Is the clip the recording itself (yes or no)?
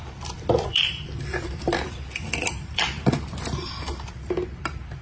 no